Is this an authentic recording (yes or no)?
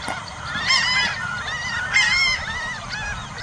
yes